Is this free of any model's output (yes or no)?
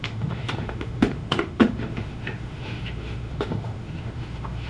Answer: no